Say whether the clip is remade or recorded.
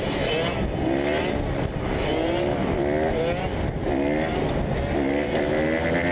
recorded